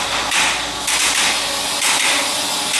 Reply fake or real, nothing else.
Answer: real